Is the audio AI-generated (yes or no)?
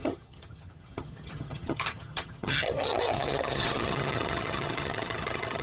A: yes